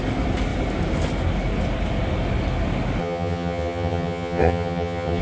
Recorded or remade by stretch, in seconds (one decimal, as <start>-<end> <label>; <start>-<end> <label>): 0.0-3.0 recorded; 3.0-5.2 remade